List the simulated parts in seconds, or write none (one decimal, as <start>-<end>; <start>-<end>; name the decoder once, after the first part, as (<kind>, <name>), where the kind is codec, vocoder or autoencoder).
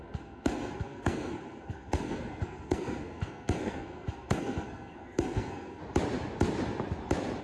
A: 0.0-5.8 (codec, SNAC)